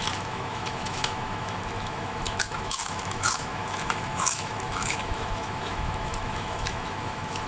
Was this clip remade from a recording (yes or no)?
yes